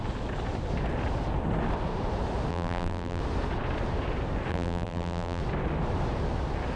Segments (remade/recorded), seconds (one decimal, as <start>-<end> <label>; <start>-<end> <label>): 0.0-2.5 recorded; 2.5-3.2 remade; 3.2-4.5 recorded; 4.5-5.4 remade; 5.4-6.8 recorded